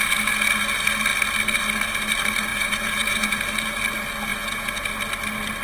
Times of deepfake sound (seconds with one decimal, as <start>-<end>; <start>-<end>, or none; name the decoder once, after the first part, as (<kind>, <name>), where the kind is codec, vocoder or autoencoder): 2.5-3.4 (vocoder, Vocos); 4.3-4.9